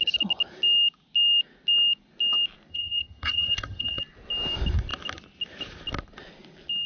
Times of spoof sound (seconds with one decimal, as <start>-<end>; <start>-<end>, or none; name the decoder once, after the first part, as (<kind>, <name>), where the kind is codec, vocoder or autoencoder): 2.7-4.0 (vocoder, HiFi-GAN)